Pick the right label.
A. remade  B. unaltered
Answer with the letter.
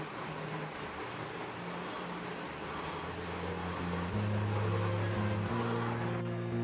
B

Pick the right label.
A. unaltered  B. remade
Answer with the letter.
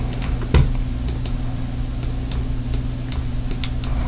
A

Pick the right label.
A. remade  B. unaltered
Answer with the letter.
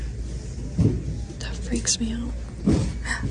B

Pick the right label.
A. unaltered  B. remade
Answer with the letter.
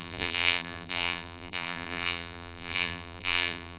B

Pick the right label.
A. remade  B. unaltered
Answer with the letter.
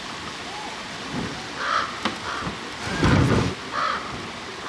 B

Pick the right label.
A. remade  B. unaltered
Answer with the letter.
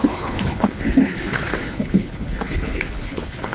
A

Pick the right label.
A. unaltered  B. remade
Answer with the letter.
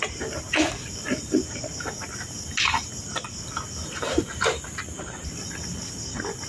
A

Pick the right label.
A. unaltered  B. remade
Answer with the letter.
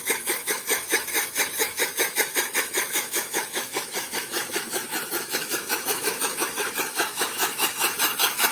B